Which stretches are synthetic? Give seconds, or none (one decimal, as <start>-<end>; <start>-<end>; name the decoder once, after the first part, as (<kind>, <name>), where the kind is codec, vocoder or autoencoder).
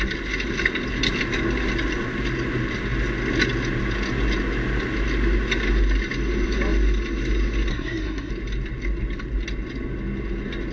7.7-8.3 (codec, SNAC)